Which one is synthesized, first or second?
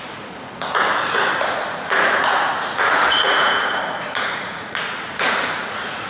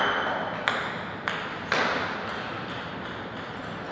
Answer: first